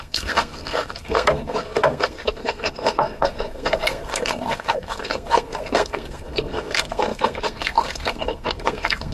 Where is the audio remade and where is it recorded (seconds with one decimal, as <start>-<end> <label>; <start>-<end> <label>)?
0.0-9.1 remade